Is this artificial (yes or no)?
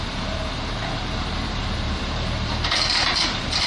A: yes